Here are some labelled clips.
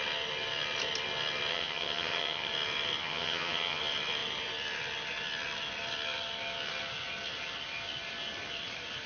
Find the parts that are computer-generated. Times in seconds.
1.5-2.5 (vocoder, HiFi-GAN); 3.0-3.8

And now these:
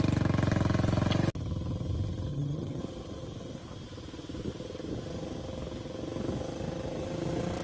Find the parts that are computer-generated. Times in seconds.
2.3-2.8 (vocoder, HiFi-GAN)

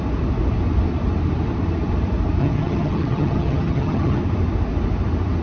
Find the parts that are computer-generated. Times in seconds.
2.4-4.2 (vocoder, HiFi-GAN)

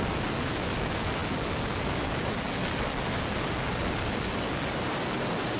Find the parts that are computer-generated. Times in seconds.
none

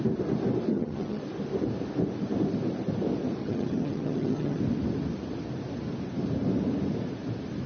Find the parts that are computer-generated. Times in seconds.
0.7-1.2 (vocoder, HiFi-GAN); 3.4-4.6

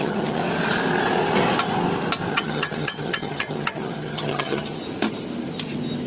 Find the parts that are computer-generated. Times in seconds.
0.0-0.4 (vocoder, HiFi-GAN); 2.3-4.8